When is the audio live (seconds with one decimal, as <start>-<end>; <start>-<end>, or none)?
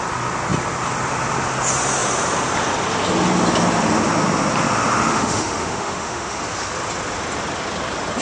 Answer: 0.0-5.1; 6.4-8.2